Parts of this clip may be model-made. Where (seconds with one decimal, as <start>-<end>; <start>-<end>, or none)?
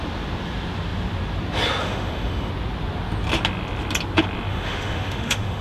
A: 1.8-2.5; 4.5-5.6